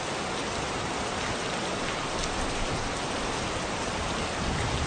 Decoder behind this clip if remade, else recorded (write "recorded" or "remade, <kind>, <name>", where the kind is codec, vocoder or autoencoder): recorded